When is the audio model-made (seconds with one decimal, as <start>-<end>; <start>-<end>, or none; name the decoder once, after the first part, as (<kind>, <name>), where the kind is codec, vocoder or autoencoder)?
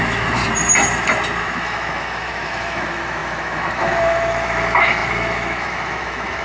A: 0.0-0.4 (autoencoder, DAC-VAE); 1.4-6.4